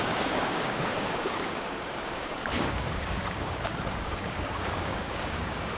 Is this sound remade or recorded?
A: remade